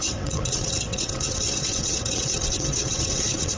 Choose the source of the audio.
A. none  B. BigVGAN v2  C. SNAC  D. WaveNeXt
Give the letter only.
D